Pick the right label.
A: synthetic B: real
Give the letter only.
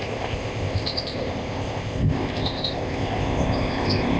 A